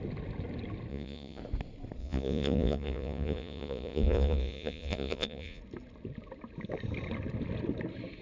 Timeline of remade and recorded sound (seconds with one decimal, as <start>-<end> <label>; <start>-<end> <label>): 0.0-0.9 recorded; 0.9-1.4 remade; 1.4-2.0 recorded; 2.0-5.6 remade; 5.6-8.2 recorded